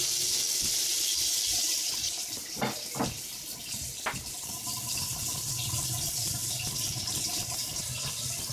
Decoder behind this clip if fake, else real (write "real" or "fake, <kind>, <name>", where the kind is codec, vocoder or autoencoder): real